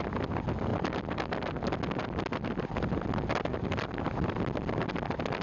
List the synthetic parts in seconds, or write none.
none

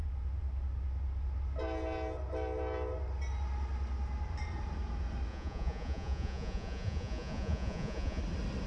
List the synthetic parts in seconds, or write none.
5.3-8.2 (vocoder, Vocos)

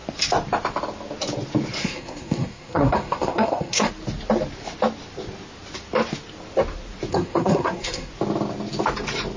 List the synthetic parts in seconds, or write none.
1.8-3.9 (codec, SNAC); 7.1-8.1

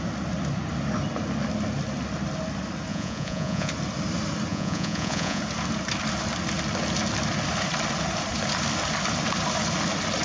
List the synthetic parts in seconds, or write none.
2.9-3.7 (vocoder, Vocos); 4.5-5.4

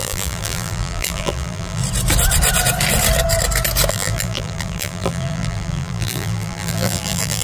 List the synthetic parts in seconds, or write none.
0.0-1.8 (vocoder, BigVGAN v2); 3.9-7.4

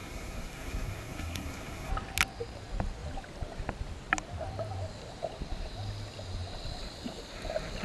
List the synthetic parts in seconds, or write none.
0.0-1.9 (codec, SNAC)